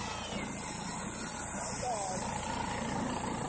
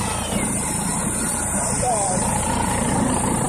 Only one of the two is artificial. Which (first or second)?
second